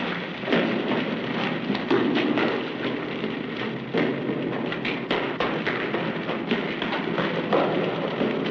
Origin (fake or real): real